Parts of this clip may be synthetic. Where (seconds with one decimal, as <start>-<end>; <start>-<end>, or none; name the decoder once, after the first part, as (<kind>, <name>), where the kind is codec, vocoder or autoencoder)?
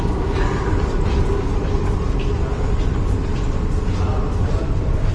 none